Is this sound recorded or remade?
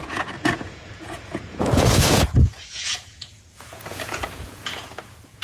remade